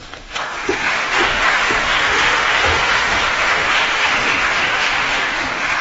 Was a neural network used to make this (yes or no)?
yes